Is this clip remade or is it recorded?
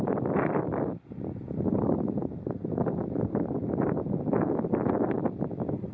remade